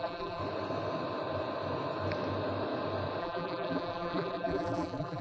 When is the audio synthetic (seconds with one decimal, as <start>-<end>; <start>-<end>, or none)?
0.0-0.4; 3.2-5.2